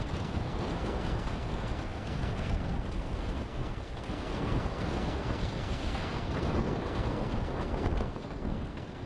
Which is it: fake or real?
fake